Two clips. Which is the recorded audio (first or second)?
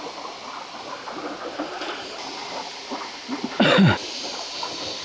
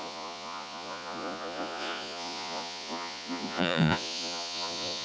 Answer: first